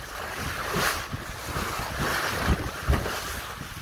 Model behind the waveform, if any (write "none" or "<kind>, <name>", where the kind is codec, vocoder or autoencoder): none